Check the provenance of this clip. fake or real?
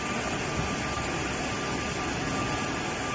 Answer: real